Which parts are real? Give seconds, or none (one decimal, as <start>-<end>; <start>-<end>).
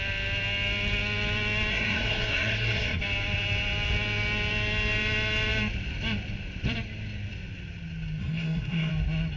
0.0-1.7; 3.0-8.2; 8.9-9.4